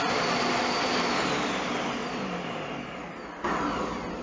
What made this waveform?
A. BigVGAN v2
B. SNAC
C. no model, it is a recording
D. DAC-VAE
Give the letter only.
C